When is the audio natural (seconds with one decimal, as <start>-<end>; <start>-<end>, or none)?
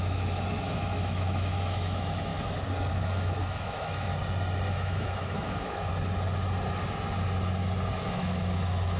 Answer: 2.3-2.9; 4.1-4.7; 5.9-7.9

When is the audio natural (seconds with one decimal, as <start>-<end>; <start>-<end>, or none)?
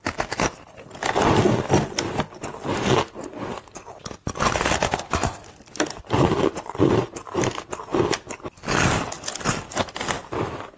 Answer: 0.0-10.8